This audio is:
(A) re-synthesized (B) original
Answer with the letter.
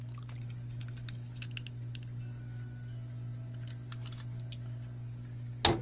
B